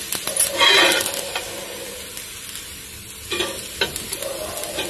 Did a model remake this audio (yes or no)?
no